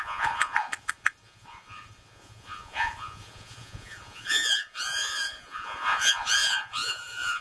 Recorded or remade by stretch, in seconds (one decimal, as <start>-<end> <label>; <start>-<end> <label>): 0.0-7.4 remade